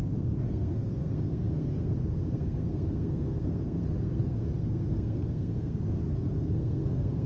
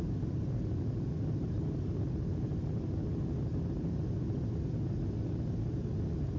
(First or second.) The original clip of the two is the second